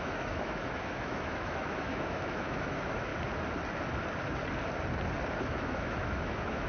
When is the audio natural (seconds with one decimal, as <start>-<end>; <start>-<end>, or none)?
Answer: 3.1-5.4